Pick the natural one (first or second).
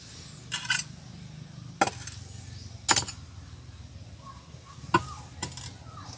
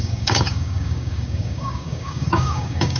first